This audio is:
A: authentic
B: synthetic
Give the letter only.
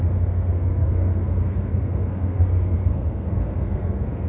B